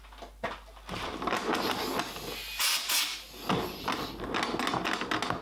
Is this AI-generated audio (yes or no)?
no